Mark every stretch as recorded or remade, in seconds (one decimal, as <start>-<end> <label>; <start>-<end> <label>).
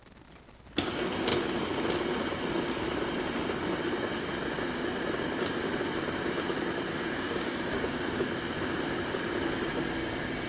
0.0-6.9 recorded; 6.9-8.3 remade; 8.3-10.5 recorded